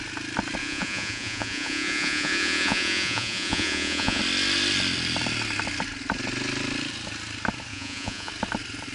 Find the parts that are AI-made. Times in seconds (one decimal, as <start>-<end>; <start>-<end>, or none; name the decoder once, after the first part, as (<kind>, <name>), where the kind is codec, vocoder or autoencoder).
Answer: 0.6-4.2 (vocoder, Vocos); 7.7-8.3